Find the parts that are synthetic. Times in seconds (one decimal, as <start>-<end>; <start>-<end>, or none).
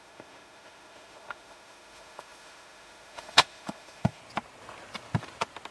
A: 0.0-4.2